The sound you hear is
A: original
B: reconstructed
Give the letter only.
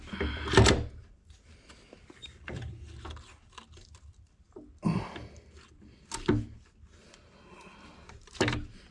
A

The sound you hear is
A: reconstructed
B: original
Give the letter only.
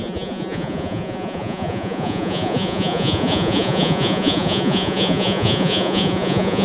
A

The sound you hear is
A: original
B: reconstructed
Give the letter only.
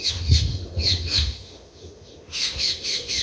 B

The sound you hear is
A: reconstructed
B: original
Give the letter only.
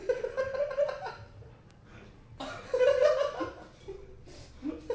B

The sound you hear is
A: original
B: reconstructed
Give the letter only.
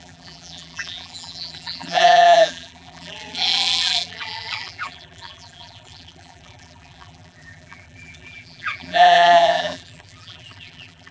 B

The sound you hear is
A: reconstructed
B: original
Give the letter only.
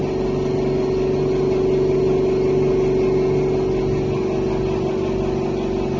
B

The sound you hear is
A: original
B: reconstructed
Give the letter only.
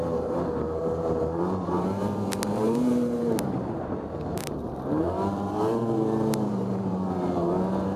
B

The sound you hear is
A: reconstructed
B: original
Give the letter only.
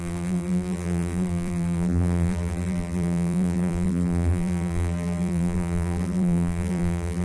A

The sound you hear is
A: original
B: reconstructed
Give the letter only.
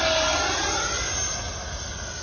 A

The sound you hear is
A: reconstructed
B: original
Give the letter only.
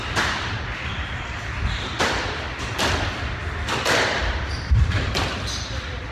A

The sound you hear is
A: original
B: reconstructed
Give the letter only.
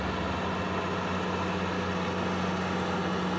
A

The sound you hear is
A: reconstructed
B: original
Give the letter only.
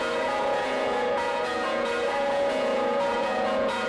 A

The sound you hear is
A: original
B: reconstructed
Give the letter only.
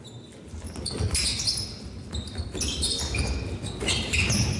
A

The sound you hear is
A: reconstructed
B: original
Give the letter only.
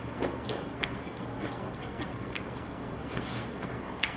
A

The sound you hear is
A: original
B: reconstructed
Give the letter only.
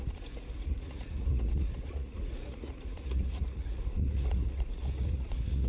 B